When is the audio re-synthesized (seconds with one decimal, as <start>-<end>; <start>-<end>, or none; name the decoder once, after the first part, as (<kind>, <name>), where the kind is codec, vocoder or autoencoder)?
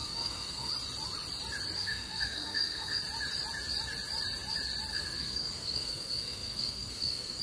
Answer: 0.0-0.7 (codec, SNAC); 1.8-3.0; 4.9-7.4